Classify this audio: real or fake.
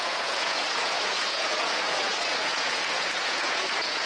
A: fake